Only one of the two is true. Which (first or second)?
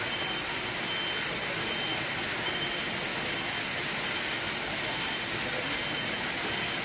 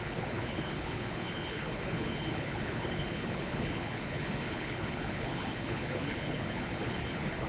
first